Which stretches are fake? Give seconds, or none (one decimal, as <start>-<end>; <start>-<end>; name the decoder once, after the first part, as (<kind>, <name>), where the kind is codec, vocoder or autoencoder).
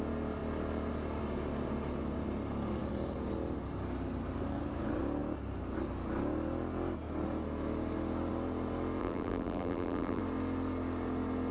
9.0-10.2 (vocoder, BigVGAN v2)